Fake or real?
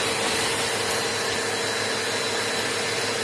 real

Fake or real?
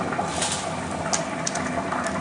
real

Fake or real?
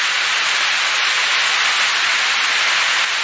real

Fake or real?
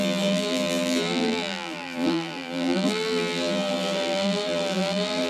fake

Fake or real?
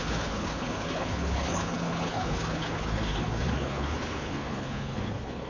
fake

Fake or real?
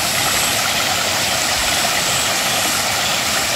real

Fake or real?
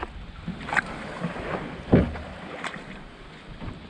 real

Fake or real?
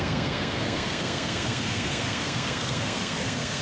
fake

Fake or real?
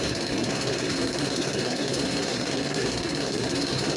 fake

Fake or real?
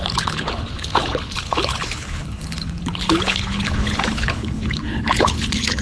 fake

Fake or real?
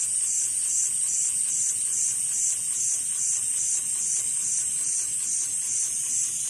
real